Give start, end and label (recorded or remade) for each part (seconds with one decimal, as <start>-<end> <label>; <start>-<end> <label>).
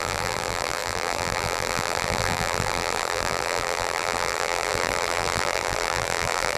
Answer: 0.0-6.6 remade